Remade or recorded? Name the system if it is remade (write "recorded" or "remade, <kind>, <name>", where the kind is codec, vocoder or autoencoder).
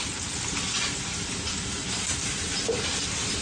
recorded